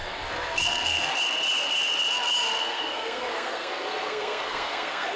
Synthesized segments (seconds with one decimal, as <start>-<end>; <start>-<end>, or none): 0.0-1.1; 2.6-5.2